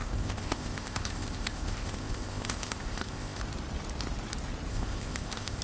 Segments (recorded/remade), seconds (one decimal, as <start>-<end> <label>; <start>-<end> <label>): 0.0-3.4 remade; 3.4-4.7 recorded; 4.7-5.6 remade